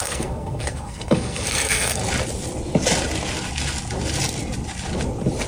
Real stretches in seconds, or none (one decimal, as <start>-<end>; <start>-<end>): 2.0-5.5

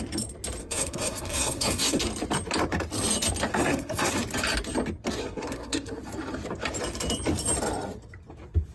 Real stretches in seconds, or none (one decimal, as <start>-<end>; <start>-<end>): 0.0-0.6; 2.0-3.5; 4.1-5.2; 6.0-8.7

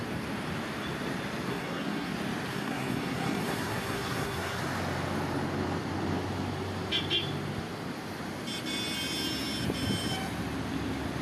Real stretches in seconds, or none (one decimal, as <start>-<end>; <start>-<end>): 0.0-1.5; 2.1-2.5; 4.6-11.2

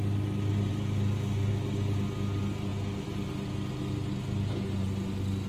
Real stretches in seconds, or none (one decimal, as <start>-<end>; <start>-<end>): 0.0-5.5

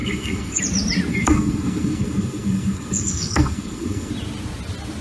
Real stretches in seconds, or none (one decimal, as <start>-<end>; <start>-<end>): 0.6-1.1; 4.1-5.0

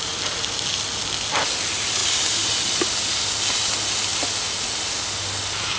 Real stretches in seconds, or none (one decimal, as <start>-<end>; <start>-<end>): 0.0-5.8

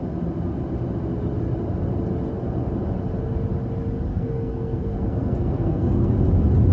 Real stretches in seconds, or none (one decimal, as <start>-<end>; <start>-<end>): 0.0-4.1; 6.1-6.7